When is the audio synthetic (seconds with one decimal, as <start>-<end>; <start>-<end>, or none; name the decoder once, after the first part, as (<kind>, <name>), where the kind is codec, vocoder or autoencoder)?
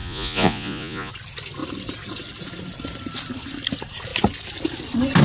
0.0-1.1 (vocoder, Vocos)